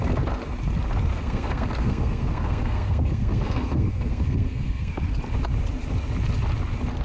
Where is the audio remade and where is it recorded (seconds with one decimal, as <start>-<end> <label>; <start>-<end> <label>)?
0.0-1.1 recorded; 1.1-4.9 remade; 4.9-7.0 recorded